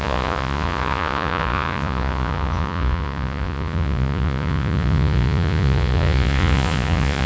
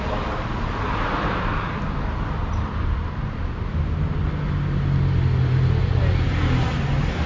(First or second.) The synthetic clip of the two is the first